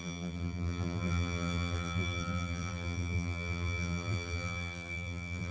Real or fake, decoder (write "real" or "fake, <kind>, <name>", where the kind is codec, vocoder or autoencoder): fake, vocoder, BigVGAN v2